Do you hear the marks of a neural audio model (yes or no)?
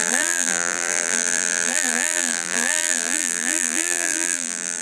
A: yes